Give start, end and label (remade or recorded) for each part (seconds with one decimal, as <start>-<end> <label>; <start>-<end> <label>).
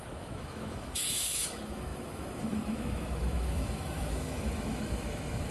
0.0-5.5 remade